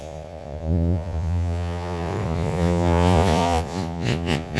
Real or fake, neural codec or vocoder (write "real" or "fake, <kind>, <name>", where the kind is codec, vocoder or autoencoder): fake, vocoder, Vocos